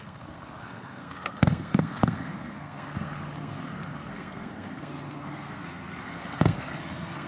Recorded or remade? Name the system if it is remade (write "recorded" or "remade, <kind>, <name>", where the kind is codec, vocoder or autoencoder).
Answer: remade, codec, SNAC